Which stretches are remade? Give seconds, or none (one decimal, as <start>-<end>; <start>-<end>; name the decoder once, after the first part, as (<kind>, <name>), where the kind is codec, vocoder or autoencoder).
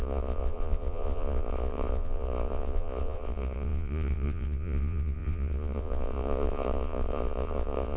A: 0.0-8.0 (vocoder, Vocos)